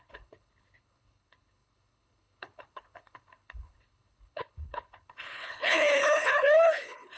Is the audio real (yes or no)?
no